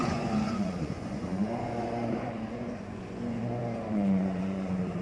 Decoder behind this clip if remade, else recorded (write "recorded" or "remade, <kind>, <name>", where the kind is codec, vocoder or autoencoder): remade, vocoder, Vocos